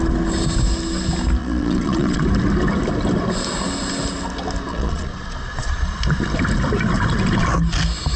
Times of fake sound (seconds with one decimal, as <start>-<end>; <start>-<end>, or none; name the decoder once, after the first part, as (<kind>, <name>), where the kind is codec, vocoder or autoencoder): 1.4-2.2 (vocoder, Vocos); 4.7-6.0